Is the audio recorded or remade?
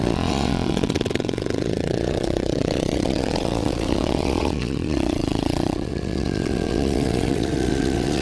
remade